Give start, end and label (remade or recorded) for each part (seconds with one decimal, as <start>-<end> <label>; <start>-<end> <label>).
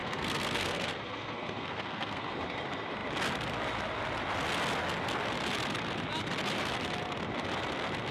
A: 0.0-2.2 remade; 2.2-8.1 recorded